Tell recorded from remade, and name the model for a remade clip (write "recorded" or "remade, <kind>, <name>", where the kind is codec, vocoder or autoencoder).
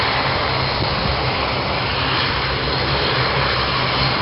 recorded